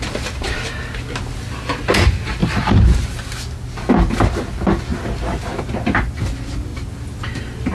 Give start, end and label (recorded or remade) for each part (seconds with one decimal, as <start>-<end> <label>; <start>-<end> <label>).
0.0-2.4 recorded; 2.4-3.2 remade; 3.2-7.7 recorded